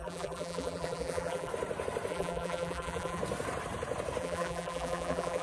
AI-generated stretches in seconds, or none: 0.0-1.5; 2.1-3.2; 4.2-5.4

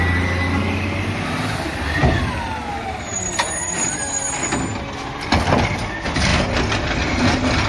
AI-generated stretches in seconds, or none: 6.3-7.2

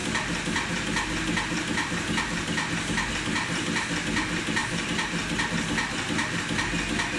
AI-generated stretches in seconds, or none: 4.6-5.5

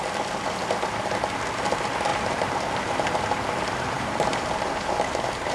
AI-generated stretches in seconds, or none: 2.1-5.5

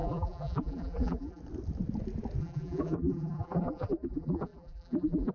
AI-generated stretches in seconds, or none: 0.0-1.4; 2.4-5.3

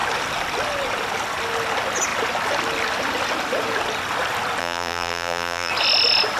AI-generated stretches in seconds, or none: 4.6-5.7

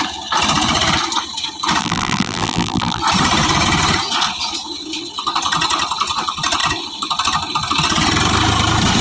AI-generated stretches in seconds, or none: 1.8-3.0

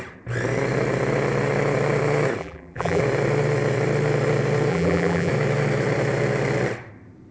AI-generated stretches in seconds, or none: 2.4-3.0; 4.7-5.3